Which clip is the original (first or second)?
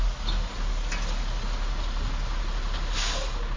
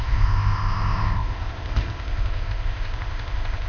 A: first